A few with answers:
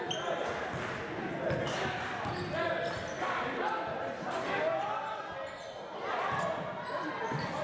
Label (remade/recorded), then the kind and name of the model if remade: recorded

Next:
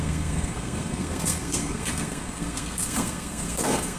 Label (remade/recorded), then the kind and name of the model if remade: remade, codec, SNAC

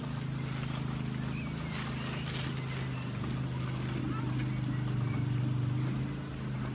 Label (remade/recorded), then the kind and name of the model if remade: recorded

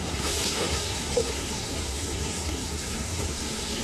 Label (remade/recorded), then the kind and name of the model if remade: remade, codec, SNAC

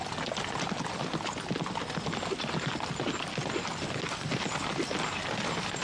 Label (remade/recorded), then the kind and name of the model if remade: recorded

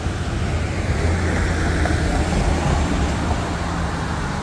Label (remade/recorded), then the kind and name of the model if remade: recorded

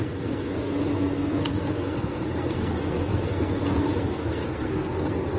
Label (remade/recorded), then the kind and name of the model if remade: remade, codec, SNAC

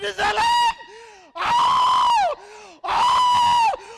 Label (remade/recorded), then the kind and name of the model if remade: recorded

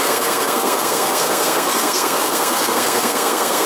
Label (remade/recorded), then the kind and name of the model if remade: remade, codec, SNAC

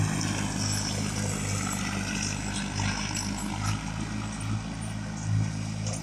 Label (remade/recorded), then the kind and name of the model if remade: recorded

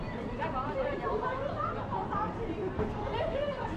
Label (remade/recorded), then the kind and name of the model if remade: recorded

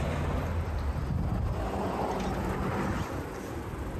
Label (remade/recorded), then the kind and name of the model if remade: recorded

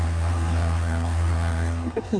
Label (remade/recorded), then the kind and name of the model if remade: remade, codec, SNAC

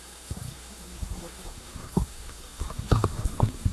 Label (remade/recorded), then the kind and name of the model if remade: remade, codec, SNAC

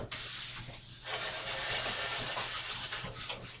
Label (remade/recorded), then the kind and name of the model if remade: recorded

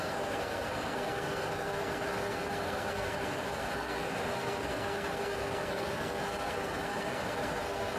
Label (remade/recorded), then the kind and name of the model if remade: remade, codec, SNAC